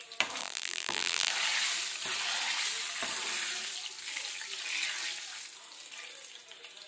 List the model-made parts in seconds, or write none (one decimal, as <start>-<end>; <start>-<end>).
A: 0.4-1.3